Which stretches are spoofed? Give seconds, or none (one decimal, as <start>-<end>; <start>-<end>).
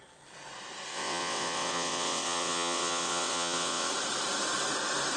0.9-3.9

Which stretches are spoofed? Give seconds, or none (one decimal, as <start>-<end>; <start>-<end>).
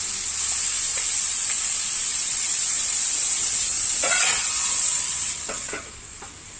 0.9-1.7; 2.1-5.7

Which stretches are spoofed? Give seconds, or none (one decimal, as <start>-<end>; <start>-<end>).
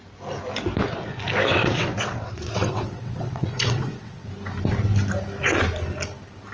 1.5-4.3